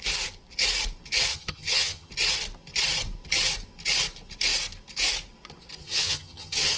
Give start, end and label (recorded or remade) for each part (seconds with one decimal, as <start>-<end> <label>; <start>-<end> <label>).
0.0-1.3 recorded; 1.3-2.1 remade; 2.1-5.8 recorded; 5.8-6.8 remade